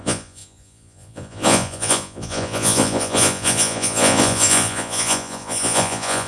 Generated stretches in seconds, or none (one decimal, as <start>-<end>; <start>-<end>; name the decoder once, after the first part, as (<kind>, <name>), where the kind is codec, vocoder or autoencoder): 0.0-6.3 (vocoder, Vocos)